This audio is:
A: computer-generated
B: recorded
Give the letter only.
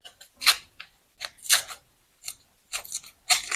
B